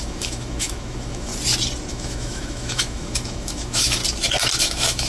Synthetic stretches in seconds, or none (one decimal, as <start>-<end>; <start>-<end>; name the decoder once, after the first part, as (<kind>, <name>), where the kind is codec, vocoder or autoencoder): 0.0-1.3 (autoencoder, DAC-VAE); 1.9-4.0; 4.6-5.1